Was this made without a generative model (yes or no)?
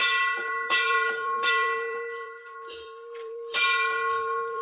no